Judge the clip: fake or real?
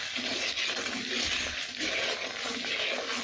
real